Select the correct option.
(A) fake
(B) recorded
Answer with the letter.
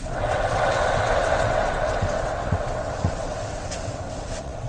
A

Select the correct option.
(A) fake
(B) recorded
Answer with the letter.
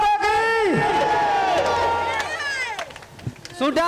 B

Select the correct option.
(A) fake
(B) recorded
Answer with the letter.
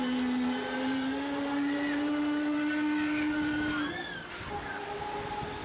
B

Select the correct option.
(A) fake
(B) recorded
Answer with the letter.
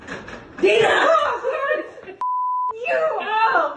B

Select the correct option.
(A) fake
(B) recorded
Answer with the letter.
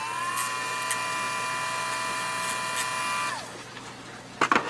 B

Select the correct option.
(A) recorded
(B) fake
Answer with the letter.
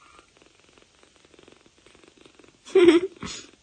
A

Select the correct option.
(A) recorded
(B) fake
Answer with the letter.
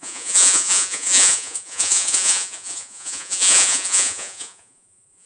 B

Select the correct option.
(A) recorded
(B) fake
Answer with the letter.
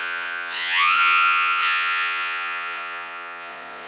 B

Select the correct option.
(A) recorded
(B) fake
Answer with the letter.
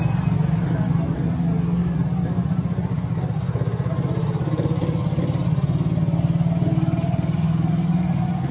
A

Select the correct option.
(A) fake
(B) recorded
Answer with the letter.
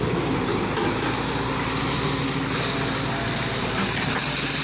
B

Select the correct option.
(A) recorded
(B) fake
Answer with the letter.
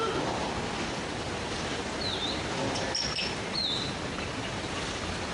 B